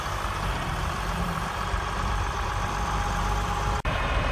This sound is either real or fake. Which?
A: fake